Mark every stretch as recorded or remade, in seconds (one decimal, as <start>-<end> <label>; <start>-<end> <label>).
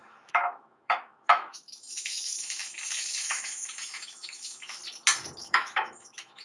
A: 0.0-4.8 remade; 4.8-5.4 recorded; 5.4-6.4 remade